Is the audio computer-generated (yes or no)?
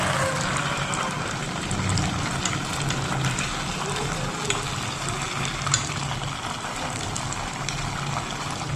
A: no